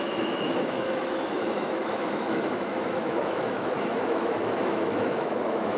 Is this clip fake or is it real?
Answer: fake